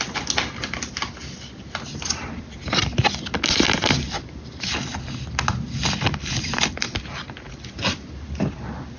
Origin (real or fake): real